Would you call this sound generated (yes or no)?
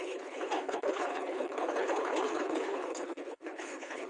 yes